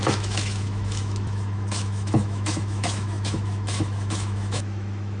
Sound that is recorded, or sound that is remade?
remade